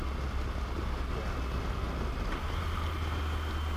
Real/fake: real